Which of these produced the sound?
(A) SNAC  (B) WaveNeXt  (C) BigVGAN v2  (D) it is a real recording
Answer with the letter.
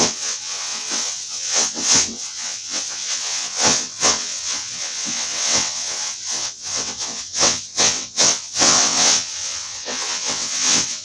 B